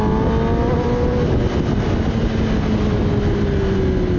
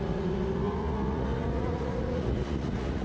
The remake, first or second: second